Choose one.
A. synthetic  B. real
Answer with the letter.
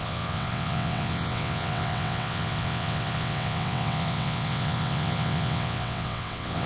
A